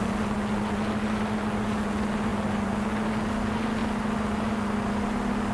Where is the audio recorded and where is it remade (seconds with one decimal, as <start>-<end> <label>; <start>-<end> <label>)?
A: 0.0-5.5 recorded